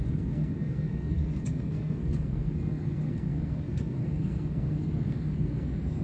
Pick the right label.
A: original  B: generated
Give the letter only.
B